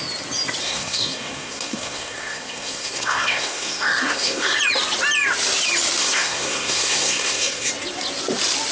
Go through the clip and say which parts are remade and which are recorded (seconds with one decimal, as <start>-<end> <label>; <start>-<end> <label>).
0.0-0.6 recorded; 0.6-4.6 remade; 4.6-6.0 recorded; 6.0-7.7 remade; 7.7-8.7 recorded